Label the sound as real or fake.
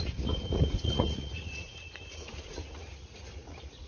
fake